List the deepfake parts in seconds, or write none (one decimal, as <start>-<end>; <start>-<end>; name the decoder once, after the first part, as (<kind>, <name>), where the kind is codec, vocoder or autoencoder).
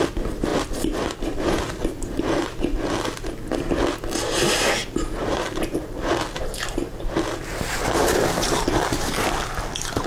0.5-2.2 (vocoder, BigVGAN v2); 4.8-9.5